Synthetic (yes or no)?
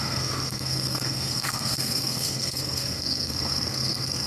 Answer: yes